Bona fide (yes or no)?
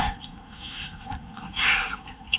no